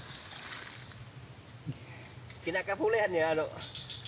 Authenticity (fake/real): real